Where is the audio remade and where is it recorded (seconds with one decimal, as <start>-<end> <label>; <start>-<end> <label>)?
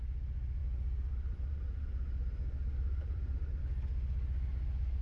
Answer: 0.0-0.6 recorded; 0.6-3.6 remade; 3.6-5.0 recorded